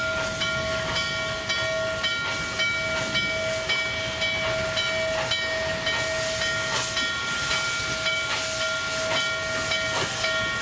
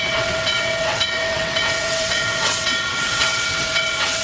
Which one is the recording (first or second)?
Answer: first